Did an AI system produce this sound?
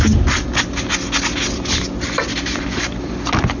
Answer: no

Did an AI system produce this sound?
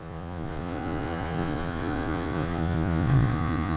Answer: yes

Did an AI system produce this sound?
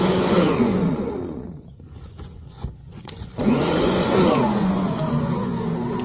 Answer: yes